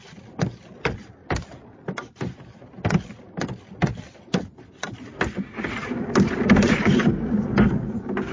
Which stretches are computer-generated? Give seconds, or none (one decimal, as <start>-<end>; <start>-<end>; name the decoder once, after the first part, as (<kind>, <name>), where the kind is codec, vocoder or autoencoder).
none